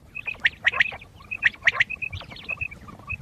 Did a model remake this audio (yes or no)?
no